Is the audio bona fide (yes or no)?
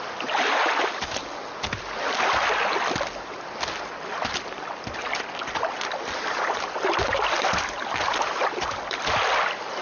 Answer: yes